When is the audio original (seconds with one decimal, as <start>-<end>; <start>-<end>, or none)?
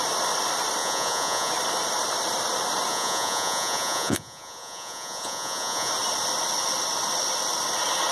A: 0.0-0.8; 1.5-2.9; 5.9-8.1